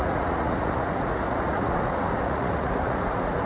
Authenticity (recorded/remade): remade